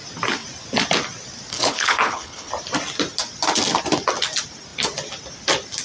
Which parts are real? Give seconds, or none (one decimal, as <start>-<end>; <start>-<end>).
0.0-1.5; 2.5-5.8